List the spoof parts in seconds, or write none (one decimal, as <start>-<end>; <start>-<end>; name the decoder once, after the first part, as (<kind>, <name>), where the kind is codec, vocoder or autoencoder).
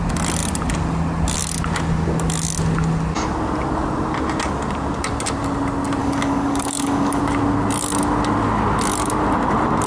6.0-7.2 (codec, DAC)